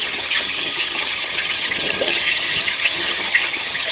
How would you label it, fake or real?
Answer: fake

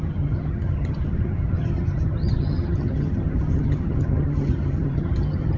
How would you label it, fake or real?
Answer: fake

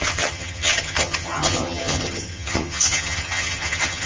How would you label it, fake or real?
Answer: fake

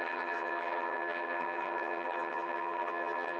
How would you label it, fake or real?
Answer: fake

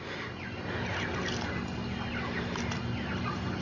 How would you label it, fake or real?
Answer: real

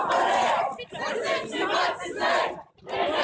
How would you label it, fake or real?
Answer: real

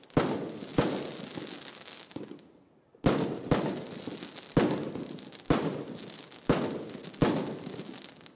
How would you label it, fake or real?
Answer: real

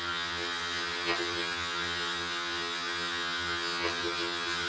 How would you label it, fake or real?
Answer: fake